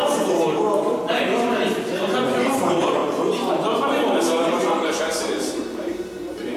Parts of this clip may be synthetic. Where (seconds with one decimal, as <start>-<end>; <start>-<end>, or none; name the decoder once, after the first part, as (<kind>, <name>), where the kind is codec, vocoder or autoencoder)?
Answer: 2.6-3.0 (vocoder, BigVGAN v2); 5.0-6.6